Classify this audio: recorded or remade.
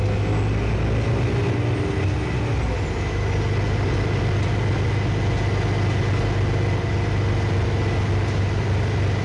recorded